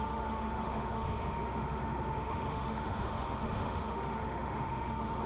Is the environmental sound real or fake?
fake